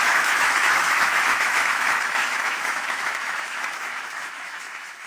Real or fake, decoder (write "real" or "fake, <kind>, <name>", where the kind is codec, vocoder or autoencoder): fake, autoencoder, DAC-VAE